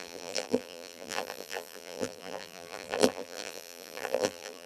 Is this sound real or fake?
fake